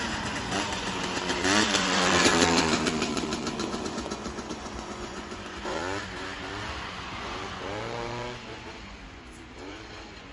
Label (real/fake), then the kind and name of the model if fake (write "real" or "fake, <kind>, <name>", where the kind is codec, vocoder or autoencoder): fake, vocoder, Vocos